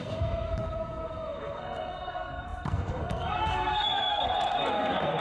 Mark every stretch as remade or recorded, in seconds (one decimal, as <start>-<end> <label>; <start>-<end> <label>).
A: 0.0-5.2 remade

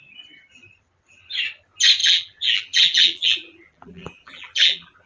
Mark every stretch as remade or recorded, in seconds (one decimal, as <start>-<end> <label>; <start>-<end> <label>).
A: 0.0-2.0 recorded; 2.0-5.1 remade

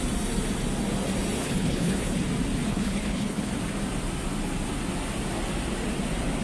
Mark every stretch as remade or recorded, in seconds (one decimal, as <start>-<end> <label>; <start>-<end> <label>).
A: 0.0-1.4 recorded; 1.4-2.2 remade; 2.2-2.7 recorded; 2.7-3.5 remade; 3.5-6.4 recorded